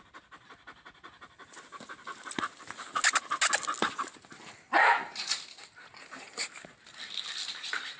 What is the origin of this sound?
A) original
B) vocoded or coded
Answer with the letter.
A